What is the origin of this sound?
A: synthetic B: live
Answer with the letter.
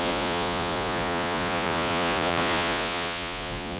A